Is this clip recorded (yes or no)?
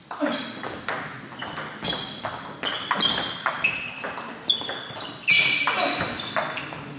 yes